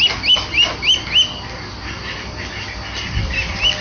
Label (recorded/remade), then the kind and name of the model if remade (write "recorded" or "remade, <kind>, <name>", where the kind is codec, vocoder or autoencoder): recorded